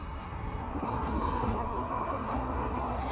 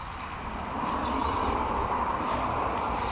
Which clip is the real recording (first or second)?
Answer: second